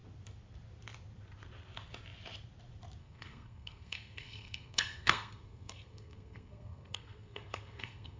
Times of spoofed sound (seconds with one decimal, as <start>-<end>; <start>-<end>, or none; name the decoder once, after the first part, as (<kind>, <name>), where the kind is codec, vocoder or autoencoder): 3.0-8.2 (codec, SNAC)